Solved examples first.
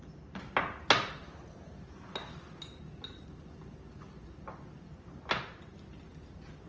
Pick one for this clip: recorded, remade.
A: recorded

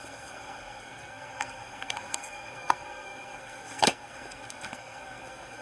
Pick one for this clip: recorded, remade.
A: remade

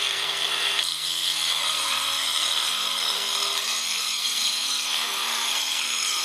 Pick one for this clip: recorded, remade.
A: remade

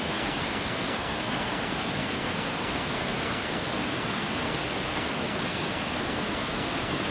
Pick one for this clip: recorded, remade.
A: remade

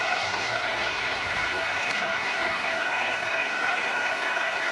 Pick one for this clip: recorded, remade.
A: remade